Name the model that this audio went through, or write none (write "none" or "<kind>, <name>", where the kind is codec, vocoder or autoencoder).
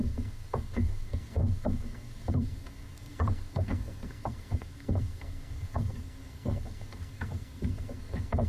codec, SNAC